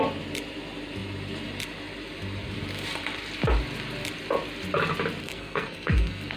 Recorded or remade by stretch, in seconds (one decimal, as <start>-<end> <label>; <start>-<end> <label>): 0.0-5.2 recorded; 5.2-6.4 remade